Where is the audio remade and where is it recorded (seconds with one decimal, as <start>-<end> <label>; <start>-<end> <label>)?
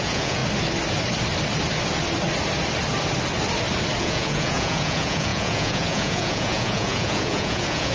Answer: 0.0-0.4 remade; 0.4-4.0 recorded; 4.0-7.9 remade